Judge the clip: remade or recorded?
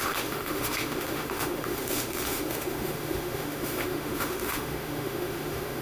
remade